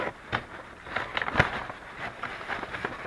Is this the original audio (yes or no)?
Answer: yes